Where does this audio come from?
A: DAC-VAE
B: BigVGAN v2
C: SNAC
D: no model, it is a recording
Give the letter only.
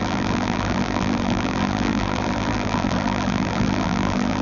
B